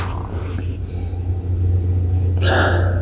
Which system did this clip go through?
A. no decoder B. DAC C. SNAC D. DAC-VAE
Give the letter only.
A